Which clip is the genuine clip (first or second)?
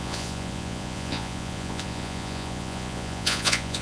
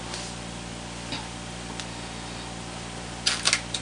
second